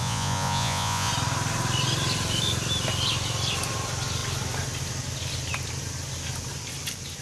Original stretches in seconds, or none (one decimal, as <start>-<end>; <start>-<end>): 1.1-7.2